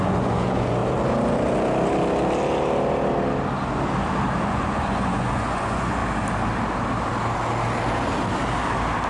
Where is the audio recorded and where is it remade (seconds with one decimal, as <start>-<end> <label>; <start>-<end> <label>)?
0.0-0.8 remade; 0.8-4.4 recorded; 4.4-6.0 remade; 6.0-9.1 recorded